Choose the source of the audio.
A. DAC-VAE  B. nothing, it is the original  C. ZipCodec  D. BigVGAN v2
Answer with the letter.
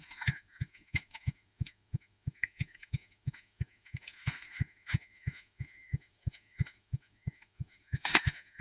A